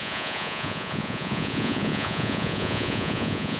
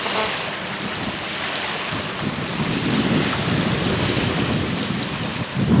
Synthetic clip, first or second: first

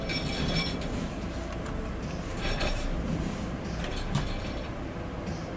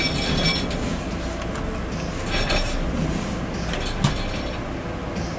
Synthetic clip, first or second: first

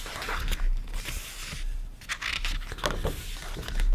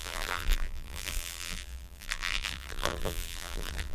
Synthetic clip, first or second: second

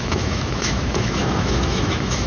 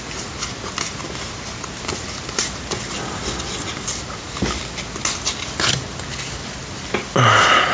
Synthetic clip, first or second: first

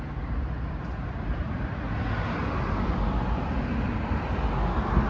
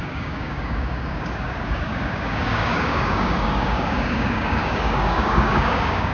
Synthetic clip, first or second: second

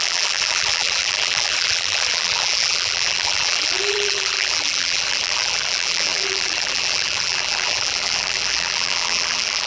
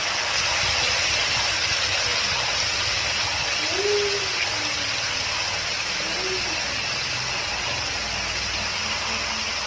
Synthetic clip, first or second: first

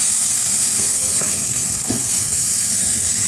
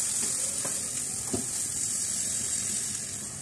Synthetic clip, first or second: first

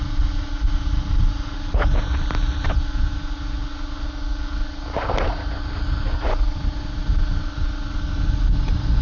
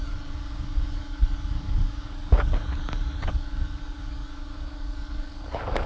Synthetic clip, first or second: second